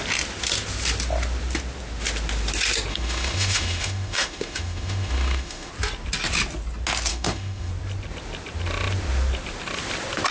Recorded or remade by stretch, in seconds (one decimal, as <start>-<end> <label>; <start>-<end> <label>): 0.0-2.9 recorded; 2.9-5.7 remade; 5.7-7.1 recorded; 7.1-7.7 remade; 7.7-10.3 recorded